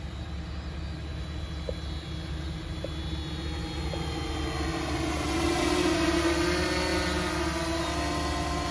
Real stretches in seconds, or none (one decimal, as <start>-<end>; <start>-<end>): 0.0-8.7